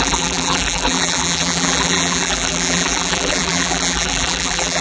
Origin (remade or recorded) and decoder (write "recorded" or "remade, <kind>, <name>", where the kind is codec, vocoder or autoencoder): remade, vocoder, BigVGAN v2